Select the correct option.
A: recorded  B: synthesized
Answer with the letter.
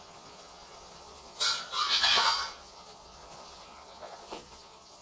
B